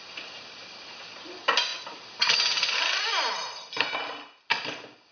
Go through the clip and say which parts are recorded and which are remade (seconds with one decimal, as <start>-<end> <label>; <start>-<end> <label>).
0.0-5.1 remade